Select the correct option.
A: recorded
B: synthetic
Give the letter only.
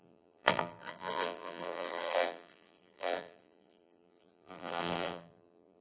B